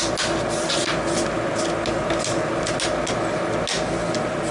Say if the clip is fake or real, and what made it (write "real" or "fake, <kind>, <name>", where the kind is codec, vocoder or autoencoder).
real